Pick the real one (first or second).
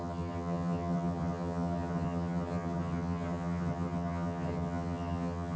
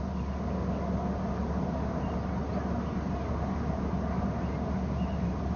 second